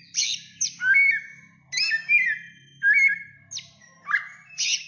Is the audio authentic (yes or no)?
yes